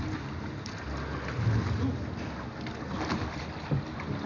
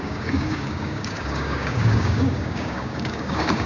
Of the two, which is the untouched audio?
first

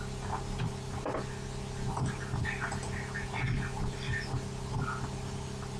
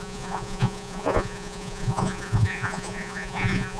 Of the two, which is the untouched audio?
first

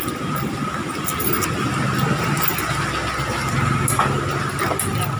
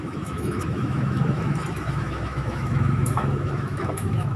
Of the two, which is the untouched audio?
first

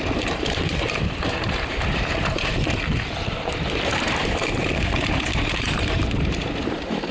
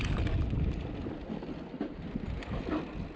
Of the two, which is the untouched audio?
second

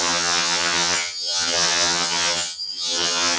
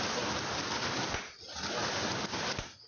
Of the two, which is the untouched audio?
second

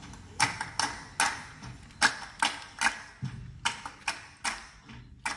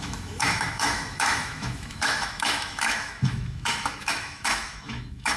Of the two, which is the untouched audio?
first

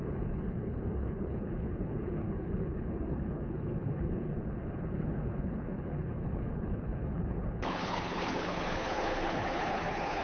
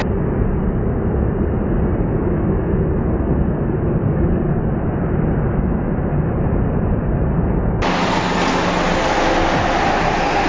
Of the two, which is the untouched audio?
second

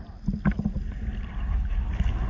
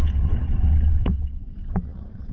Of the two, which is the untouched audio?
first